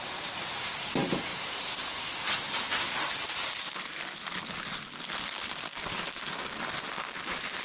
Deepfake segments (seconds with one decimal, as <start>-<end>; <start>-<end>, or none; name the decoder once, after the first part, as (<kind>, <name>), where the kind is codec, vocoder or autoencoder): none